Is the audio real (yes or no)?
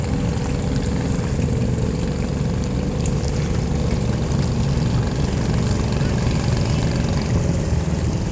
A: yes